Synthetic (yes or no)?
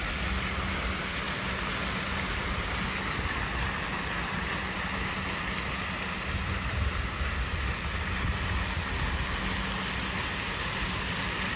no